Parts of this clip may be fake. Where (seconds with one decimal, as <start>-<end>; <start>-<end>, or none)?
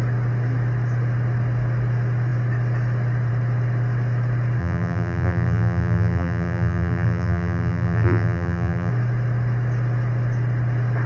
4.6-8.9